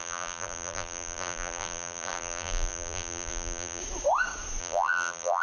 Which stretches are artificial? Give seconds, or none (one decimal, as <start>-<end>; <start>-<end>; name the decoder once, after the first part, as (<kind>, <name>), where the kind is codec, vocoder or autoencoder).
0.0-3.8 (vocoder, BigVGAN v2); 4.6-5.4